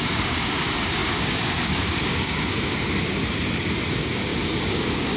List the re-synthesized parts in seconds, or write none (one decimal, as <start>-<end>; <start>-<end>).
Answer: 0.0-3.2; 3.9-5.2